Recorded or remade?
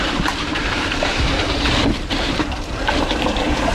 remade